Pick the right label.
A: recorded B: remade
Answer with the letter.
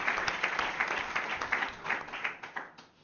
A